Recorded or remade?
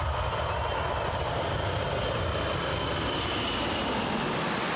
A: recorded